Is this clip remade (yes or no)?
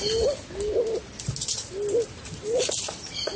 no